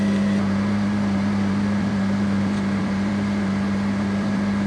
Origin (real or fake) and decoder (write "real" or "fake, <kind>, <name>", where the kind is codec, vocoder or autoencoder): fake, vocoder, BigVGAN v2